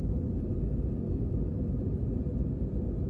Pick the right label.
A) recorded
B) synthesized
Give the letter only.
A